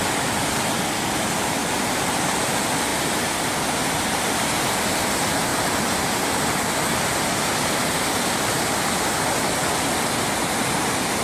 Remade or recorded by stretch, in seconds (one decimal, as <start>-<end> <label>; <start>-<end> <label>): 0.0-1.6 recorded; 1.6-2.5 remade; 2.5-2.9 recorded; 2.9-4.6 remade; 4.6-11.2 recorded